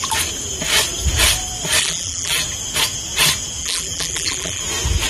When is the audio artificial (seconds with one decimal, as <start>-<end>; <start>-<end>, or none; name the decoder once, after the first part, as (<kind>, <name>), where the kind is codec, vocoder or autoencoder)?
1.8-2.4 (vocoder, BigVGAN v2); 3.6-4.6